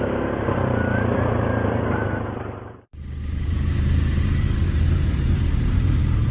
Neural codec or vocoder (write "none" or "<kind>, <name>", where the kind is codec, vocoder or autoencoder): vocoder, BigVGAN v2